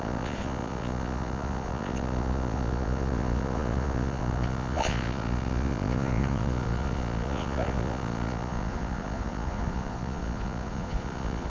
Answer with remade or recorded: remade